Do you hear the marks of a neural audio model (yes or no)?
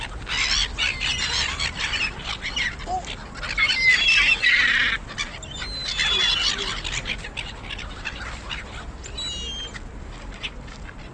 no